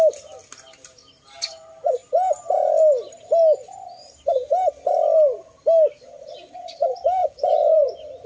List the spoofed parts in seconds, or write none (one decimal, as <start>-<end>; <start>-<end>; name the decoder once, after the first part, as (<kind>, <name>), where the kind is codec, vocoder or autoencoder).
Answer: 7.2-8.3 (vocoder, Vocos)

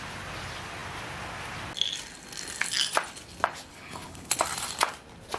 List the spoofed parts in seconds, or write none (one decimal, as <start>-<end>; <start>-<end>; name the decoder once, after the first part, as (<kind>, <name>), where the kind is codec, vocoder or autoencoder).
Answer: 3.7-4.3 (codec, HILCodec)

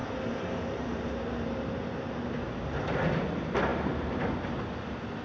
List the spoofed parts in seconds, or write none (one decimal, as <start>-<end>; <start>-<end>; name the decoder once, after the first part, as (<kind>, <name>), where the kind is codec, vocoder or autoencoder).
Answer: 0.0-2.0 (vocoder, BigVGAN v2); 3.7-4.2

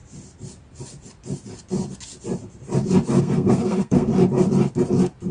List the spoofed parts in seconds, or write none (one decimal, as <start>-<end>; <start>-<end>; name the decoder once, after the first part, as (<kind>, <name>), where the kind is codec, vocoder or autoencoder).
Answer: 3.2-4.1 (codec, SNAC)

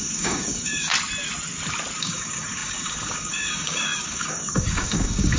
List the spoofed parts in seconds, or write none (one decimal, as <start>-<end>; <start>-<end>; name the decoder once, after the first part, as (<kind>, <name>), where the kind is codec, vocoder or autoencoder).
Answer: 0.0-0.9 (codec, DAC); 2.0-5.4

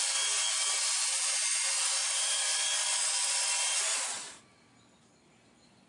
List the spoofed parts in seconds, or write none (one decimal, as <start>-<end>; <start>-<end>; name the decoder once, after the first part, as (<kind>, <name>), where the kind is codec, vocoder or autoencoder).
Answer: none

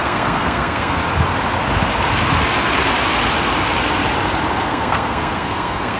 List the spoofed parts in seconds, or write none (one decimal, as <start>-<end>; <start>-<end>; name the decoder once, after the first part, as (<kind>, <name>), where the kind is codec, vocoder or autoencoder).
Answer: 0.0-1.0 (codec, SNAC); 4.6-6.0

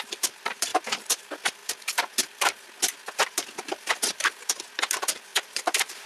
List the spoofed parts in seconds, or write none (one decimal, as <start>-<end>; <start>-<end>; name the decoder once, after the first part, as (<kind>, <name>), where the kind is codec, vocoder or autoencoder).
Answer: 0.0-6.1 (vocoder, BigVGAN v2)